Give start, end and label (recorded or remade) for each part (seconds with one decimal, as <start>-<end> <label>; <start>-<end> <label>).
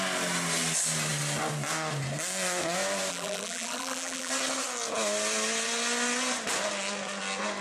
0.0-3.1 recorded; 3.1-4.3 remade; 4.3-7.6 recorded